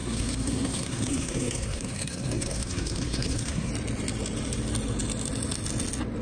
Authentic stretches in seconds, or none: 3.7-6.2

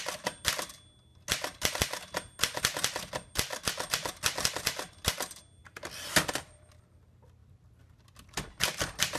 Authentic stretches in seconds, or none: 0.0-5.6; 6.8-7.4

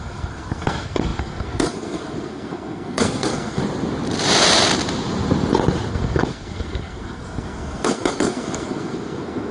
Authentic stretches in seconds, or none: 3.6-5.9

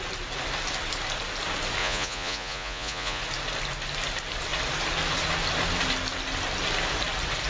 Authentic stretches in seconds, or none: 0.0-1.8; 3.2-7.5

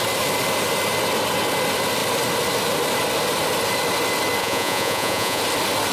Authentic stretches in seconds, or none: 0.0-4.4; 5.4-5.9